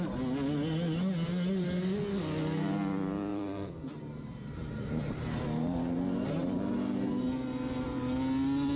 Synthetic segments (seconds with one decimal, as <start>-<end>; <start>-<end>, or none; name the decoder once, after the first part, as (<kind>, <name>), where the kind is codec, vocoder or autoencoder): 3.3-7.1 (vocoder, BigVGAN v2)